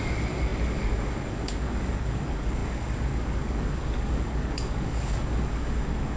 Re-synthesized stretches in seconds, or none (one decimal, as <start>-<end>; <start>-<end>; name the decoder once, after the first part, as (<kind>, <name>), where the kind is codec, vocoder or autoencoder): 0.0-6.2 (codec, DAC)